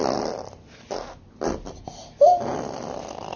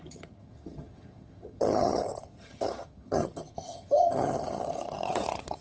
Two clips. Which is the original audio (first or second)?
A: first